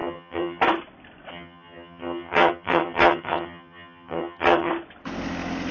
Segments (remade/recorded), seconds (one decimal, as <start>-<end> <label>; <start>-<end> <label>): 0.0-0.6 remade; 0.6-1.3 recorded; 1.3-4.7 remade; 4.7-5.7 recorded